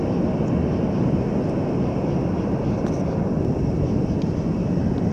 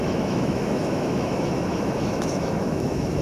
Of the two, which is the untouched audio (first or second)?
first